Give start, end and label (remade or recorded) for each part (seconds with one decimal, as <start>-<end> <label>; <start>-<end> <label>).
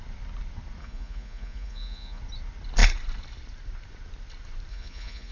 0.0-0.8 recorded; 0.8-2.2 remade; 2.2-4.7 recorded; 4.7-5.3 remade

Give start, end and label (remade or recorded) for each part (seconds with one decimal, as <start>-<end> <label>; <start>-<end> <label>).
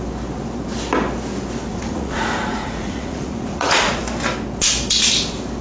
0.0-1.7 recorded; 1.7-4.0 remade; 4.0-5.6 recorded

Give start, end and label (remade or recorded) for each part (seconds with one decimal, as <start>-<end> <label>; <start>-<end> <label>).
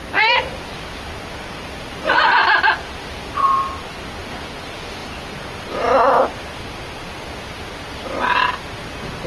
0.0-9.3 recorded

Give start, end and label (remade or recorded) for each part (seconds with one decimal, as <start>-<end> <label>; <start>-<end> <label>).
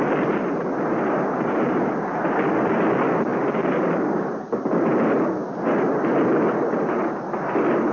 0.0-7.9 recorded